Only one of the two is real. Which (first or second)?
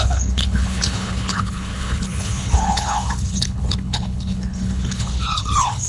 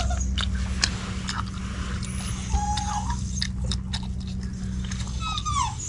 second